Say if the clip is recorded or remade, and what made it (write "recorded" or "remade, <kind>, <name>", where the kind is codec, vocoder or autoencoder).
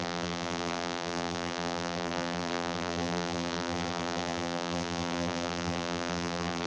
remade, vocoder, BigVGAN v2